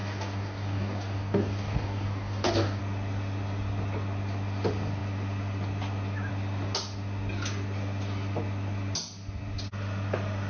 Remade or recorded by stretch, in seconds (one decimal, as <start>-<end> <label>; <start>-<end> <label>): 0.0-2.8 remade; 2.8-10.5 recorded